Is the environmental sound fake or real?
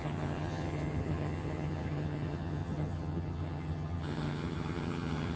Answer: fake